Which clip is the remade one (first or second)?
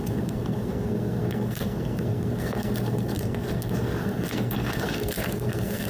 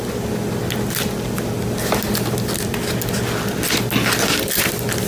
first